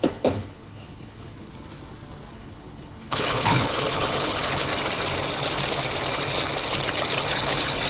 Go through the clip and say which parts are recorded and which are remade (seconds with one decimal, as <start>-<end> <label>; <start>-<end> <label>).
0.0-1.5 remade; 1.5-2.3 recorded; 2.3-4.7 remade; 4.7-7.3 recorded; 7.3-7.9 remade